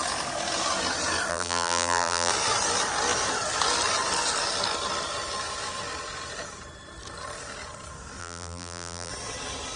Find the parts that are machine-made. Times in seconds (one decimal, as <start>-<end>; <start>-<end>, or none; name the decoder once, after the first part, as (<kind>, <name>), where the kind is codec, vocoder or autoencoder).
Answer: 1.3-2.3 (vocoder, BigVGAN v2); 8.2-9.1